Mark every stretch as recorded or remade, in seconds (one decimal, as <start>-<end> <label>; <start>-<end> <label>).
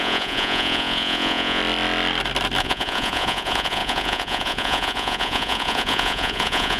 0.0-1.6 remade; 1.6-2.6 recorded; 2.6-6.8 remade